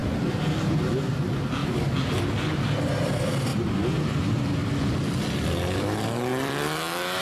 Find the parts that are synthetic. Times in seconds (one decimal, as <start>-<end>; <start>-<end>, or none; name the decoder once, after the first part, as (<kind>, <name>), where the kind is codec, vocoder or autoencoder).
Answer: 1.6-2.1 (vocoder, BigVGAN v2); 3.5-4.8; 6.3-7.2